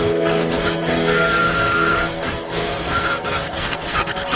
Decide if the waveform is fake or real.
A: fake